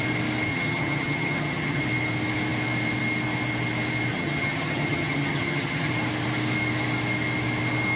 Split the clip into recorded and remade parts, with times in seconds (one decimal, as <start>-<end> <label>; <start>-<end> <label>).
0.0-0.5 recorded; 0.5-1.8 remade; 1.8-4.1 recorded; 4.1-5.9 remade; 5.9-8.0 recorded